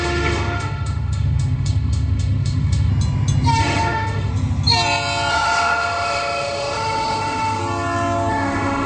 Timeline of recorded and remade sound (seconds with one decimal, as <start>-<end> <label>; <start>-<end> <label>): 0.0-2.9 remade; 2.9-3.6 recorded; 3.6-4.3 remade; 4.3-5.3 recorded; 5.3-7.6 remade; 7.6-8.3 recorded; 8.3-8.9 remade